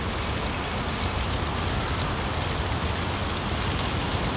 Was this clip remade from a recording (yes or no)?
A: no